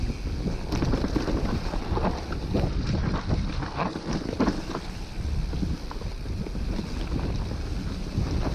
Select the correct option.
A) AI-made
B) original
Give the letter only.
B